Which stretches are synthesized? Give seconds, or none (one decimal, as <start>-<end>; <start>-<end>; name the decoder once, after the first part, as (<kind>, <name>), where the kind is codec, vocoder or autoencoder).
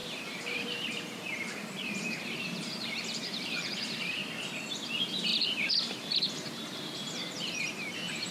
0.0-4.2 (vocoder, BigVGAN v2); 4.7-8.3